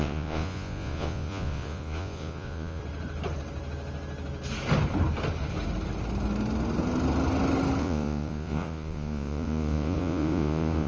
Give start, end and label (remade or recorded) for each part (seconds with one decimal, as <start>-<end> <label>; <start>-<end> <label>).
0.0-2.8 remade; 2.8-7.8 recorded; 7.8-10.9 remade